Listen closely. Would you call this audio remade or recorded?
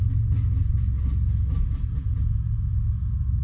recorded